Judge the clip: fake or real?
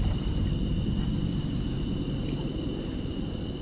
fake